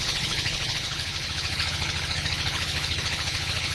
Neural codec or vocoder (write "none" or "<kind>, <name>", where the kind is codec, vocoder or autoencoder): codec, HILCodec